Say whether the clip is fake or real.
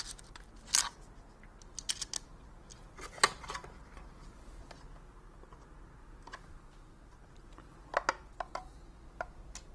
real